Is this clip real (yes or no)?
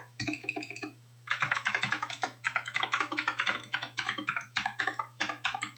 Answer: no